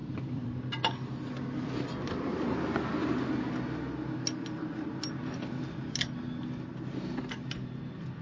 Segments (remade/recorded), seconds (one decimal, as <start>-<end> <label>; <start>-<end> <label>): 0.0-0.5 remade; 0.5-8.2 recorded